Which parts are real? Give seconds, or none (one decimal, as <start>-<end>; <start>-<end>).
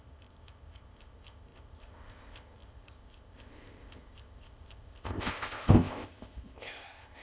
none